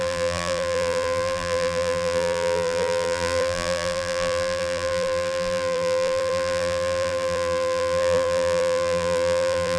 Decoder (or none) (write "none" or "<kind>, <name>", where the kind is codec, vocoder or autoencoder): vocoder, BigVGAN v2